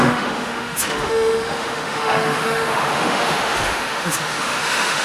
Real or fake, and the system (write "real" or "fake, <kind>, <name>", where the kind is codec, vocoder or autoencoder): fake, autoencoder, DAC-VAE